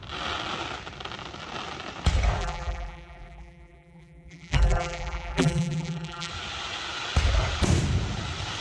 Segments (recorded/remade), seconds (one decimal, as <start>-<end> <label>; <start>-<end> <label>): 0.0-2.4 recorded; 2.4-6.3 remade; 6.3-8.6 recorded